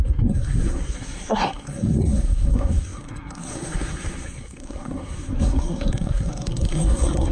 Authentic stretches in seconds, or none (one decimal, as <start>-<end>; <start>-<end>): none